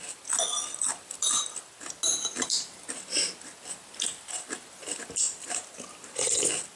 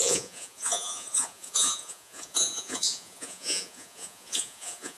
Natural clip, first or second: first